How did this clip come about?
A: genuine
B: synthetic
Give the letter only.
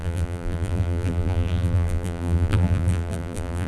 B